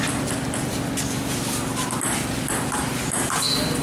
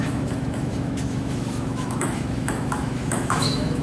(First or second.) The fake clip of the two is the second